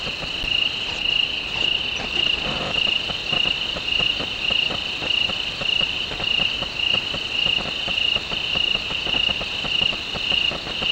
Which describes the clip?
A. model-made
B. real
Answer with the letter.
B